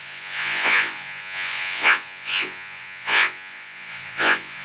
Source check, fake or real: fake